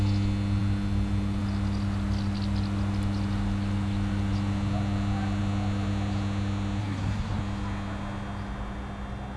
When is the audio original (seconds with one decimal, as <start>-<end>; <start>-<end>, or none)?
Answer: 0.0-6.8; 7.4-9.4